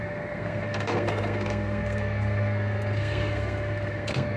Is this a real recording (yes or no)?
no